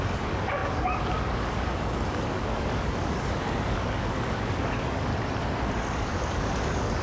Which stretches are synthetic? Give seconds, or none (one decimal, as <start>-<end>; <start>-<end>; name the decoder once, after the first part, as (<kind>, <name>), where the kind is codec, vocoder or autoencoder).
0.0-5.1 (codec, DAC); 5.9-7.0